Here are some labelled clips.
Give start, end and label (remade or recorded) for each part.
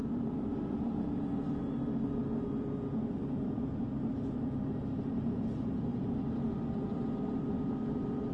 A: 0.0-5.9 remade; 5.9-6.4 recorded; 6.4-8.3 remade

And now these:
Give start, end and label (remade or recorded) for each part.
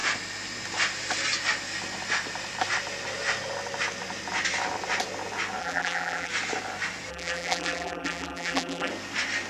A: 0.0-5.6 recorded; 5.6-6.3 remade; 6.3-7.1 recorded; 7.1-8.9 remade; 8.9-9.5 recorded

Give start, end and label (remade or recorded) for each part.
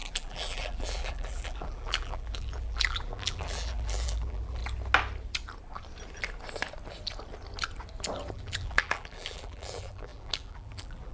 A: 0.0-4.6 remade; 4.6-8.3 recorded; 8.3-11.1 remade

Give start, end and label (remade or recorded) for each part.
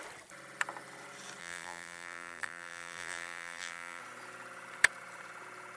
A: 0.0-1.4 recorded; 1.4-4.0 remade; 4.0-5.8 recorded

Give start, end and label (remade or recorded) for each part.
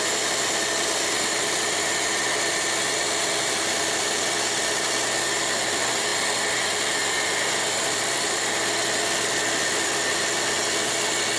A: 0.0-11.4 recorded